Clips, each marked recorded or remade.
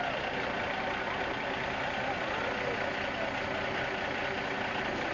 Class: recorded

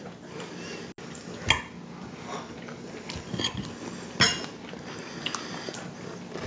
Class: recorded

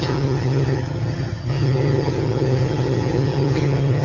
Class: remade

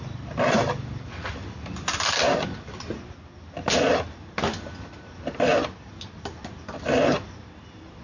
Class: recorded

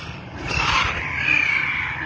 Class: recorded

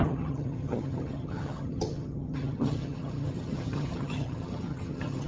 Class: remade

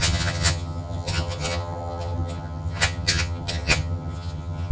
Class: remade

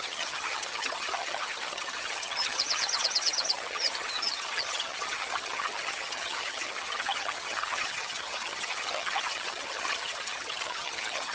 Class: remade